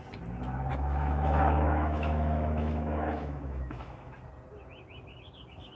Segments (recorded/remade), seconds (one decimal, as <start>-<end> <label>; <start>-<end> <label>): 0.0-0.7 recorded; 0.7-4.1 remade; 4.1-5.7 recorded